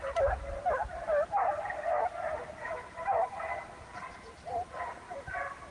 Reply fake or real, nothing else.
real